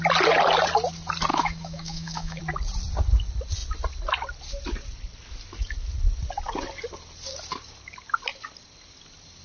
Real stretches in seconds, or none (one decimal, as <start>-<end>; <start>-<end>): 0.0-1.3; 2.4-9.4